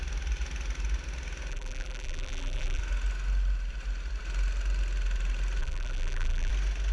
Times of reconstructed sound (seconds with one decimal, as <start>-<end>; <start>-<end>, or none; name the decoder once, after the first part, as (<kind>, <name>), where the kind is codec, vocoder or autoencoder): 1.5-2.8 (vocoder, BigVGAN v2); 5.6-6.5